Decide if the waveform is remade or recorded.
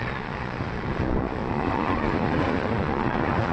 remade